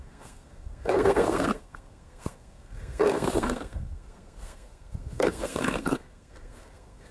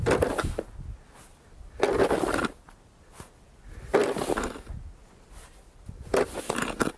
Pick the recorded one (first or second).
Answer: second